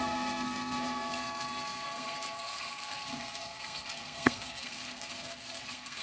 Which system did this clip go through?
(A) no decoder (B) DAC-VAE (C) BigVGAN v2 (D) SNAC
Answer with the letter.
D